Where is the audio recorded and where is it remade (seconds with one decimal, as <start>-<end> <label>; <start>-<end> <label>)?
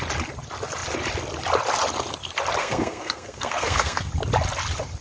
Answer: 0.0-2.6 recorded; 2.6-4.1 remade; 4.1-5.0 recorded